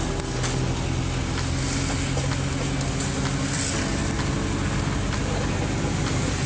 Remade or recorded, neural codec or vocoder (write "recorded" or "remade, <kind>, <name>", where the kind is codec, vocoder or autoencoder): recorded